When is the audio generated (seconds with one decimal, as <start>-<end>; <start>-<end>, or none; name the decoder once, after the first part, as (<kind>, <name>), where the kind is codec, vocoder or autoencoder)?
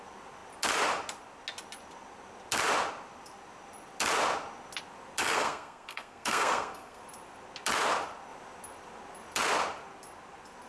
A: 5.2-7.0 (codec, SNAC)